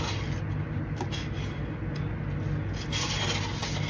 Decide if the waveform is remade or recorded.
recorded